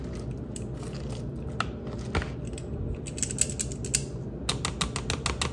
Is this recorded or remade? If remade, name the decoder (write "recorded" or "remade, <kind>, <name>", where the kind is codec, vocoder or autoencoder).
recorded